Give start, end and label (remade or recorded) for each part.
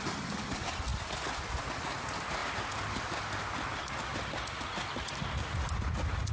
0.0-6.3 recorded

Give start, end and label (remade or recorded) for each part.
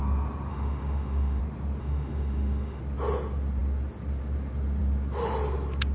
0.0-0.5 recorded; 0.5-1.4 remade; 1.4-1.8 recorded; 1.8-2.8 remade; 2.8-5.9 recorded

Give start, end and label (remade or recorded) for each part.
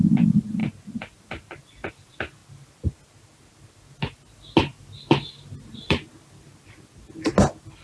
0.0-7.8 recorded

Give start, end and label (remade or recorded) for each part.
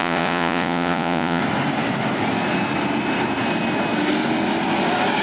0.0-1.4 remade; 1.4-5.2 recorded